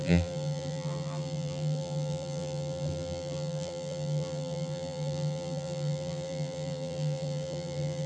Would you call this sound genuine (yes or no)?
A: no